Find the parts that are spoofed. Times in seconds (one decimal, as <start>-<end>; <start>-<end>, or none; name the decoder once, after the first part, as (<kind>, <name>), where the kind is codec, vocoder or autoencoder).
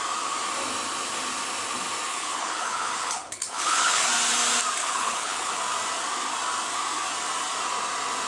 2.1-4.1 (codec, HILCodec); 4.8-5.5